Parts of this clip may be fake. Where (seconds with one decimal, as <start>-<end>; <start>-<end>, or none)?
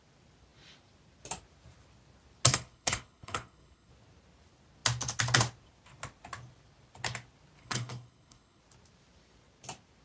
2.5-3.9; 7.6-8.6